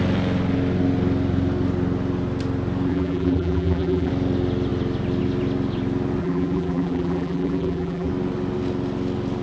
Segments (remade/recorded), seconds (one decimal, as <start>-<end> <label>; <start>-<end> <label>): 0.0-2.9 recorded; 2.9-4.1 remade; 4.1-6.2 recorded; 6.2-8.1 remade; 8.1-9.4 recorded